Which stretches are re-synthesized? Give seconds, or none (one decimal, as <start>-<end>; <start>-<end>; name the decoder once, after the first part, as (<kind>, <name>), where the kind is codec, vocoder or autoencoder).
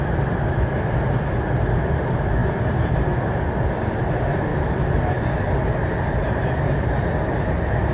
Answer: 2.4-2.9 (vocoder, BigVGAN v2); 4.5-5.3